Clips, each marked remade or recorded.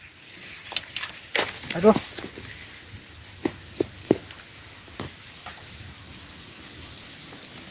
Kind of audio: recorded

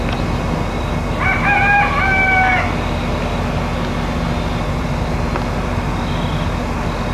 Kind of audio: recorded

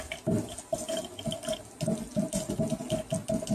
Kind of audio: recorded